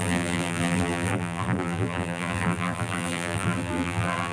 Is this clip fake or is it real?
fake